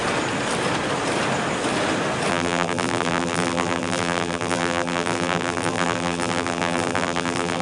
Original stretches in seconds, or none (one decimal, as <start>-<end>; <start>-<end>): 0.0-2.3